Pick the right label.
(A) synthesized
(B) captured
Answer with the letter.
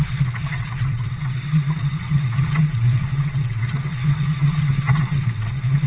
A